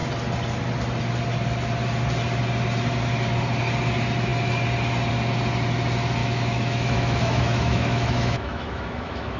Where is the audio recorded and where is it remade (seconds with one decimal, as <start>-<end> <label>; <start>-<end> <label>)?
0.0-6.2 recorded; 6.2-9.4 remade